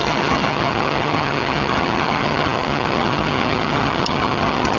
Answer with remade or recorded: remade